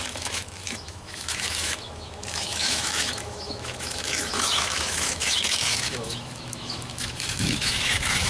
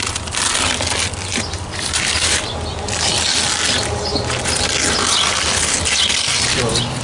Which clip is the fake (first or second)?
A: first